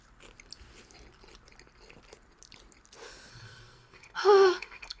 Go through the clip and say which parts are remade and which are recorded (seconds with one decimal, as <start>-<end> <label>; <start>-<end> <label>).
0.0-3.3 recorded; 3.3-5.0 remade